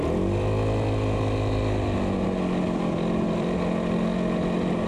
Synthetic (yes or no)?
no